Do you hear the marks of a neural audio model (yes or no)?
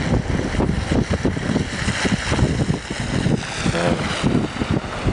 no